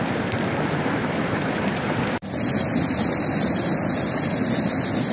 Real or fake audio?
fake